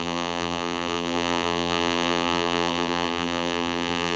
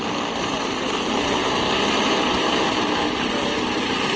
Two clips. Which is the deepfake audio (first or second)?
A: first